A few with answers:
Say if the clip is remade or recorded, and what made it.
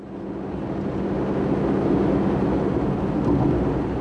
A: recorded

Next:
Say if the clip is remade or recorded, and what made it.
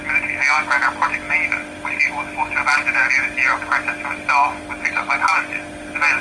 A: recorded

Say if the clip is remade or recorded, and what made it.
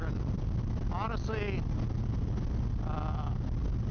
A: recorded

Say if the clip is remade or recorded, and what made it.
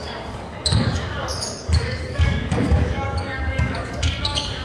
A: remade, codec, DAC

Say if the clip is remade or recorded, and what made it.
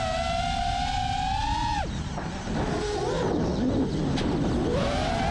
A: recorded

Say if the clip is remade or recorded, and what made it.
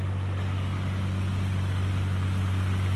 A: recorded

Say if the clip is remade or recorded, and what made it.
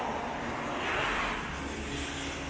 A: recorded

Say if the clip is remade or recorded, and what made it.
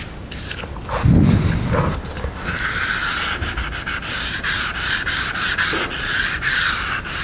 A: recorded